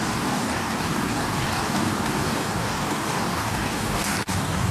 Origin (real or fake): fake